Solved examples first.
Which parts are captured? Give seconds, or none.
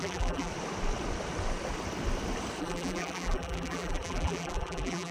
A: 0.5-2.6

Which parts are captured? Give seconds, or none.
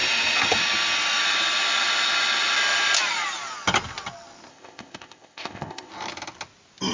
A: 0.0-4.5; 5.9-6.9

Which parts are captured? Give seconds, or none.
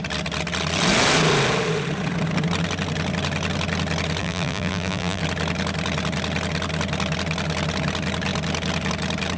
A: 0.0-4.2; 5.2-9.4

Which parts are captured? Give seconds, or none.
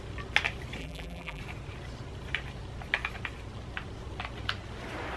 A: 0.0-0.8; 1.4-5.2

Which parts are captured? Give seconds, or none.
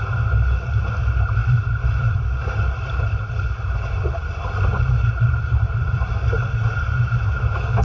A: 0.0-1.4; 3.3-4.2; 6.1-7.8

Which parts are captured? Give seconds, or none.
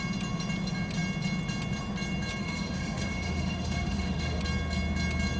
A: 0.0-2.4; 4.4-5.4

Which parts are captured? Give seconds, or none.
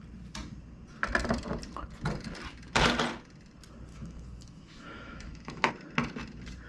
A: 0.0-3.9; 5.7-6.7